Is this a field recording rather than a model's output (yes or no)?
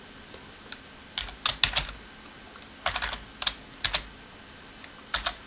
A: yes